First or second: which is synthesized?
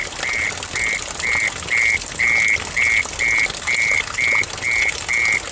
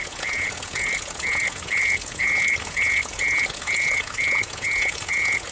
second